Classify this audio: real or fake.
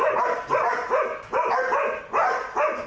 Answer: real